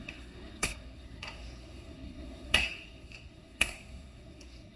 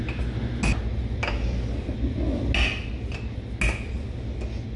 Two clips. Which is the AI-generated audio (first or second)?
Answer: first